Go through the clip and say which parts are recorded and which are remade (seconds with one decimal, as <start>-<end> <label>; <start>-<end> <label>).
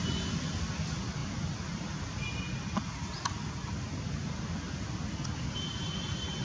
0.0-6.4 recorded